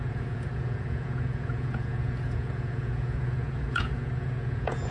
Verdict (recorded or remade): remade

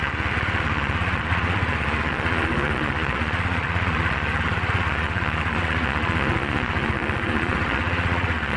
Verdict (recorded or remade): remade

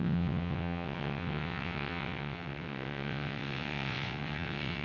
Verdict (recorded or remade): remade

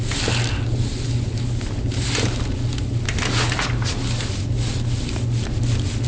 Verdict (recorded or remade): recorded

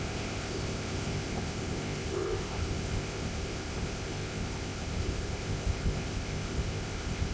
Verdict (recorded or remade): remade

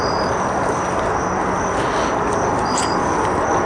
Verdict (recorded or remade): recorded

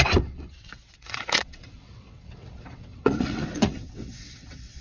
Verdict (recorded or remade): remade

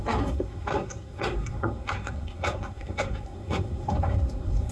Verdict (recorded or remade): remade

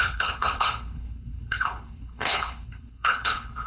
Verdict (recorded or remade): remade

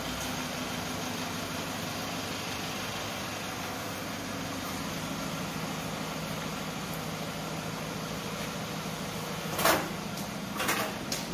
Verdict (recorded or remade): recorded